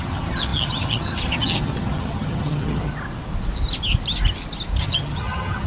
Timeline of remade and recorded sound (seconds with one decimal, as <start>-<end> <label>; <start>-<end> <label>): 0.0-2.9 remade; 2.9-4.8 recorded; 4.8-5.7 remade